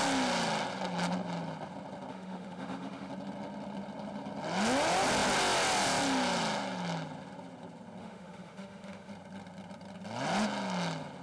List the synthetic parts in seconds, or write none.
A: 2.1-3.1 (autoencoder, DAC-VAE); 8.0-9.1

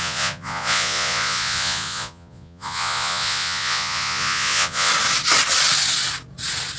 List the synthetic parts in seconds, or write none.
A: 0.0-4.9 (vocoder, Vocos)

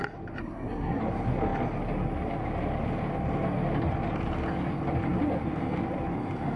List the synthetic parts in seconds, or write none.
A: 0.4-1.0 (codec, SNAC)